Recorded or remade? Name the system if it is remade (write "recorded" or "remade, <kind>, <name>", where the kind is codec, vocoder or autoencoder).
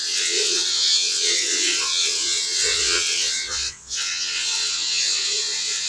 remade, vocoder, WaveNeXt